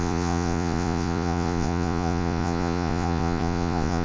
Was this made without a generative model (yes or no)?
no